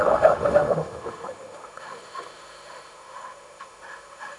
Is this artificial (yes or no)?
yes